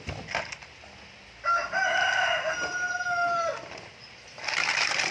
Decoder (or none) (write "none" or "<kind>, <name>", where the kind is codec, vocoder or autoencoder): none